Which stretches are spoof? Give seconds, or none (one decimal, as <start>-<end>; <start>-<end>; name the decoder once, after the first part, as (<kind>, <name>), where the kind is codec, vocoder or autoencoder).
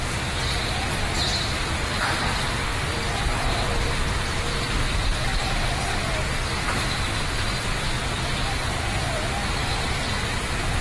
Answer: 0.0-2.7 (vocoder, BigVGAN v2); 3.4-10.8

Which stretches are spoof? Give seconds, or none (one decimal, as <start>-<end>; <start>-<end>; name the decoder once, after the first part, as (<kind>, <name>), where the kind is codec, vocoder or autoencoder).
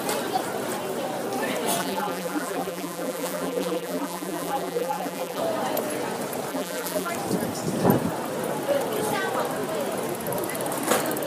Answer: 1.8-5.4 (vocoder, BigVGAN v2); 6.5-7.1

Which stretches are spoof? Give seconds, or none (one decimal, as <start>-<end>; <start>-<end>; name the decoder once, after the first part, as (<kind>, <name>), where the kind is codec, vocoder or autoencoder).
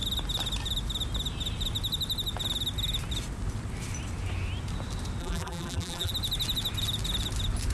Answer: 5.2-6.1 (vocoder, BigVGAN v2)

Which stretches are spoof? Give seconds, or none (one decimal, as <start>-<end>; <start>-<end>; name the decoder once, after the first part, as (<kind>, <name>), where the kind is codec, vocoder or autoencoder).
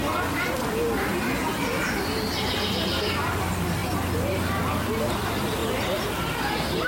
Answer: 0.0-1.1 (vocoder, BigVGAN v2); 3.0-3.8; 4.8-5.6; 6.2-6.9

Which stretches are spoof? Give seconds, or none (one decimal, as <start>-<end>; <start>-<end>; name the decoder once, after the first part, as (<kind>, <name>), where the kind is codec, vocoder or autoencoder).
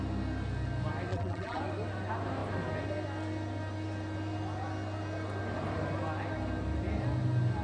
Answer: 1.1-1.6 (vocoder, BigVGAN v2)